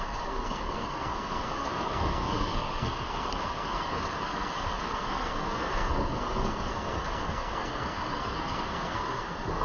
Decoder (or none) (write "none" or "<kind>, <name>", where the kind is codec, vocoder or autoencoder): codec, SNAC